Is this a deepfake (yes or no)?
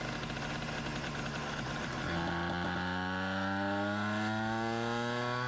no